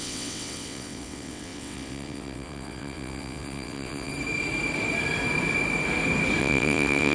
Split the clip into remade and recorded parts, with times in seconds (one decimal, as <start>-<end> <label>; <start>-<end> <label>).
0.0-4.1 remade; 4.1-6.4 recorded; 6.4-7.1 remade